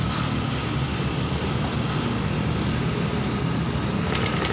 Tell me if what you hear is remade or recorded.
recorded